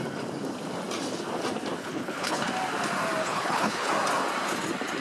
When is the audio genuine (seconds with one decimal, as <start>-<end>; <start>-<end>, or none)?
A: 0.0-1.8; 2.5-3.2; 3.9-5.0